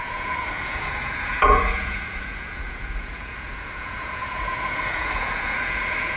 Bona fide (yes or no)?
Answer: no